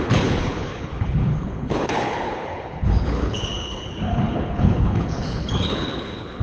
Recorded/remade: remade